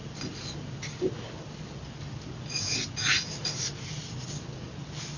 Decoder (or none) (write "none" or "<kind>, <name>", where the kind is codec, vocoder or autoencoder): none